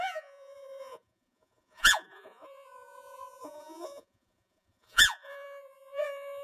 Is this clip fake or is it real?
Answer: fake